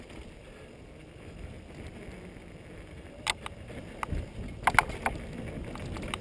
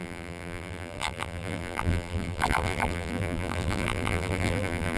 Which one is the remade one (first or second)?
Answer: second